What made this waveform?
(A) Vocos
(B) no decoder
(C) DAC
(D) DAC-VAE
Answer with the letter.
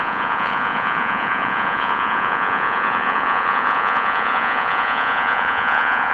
A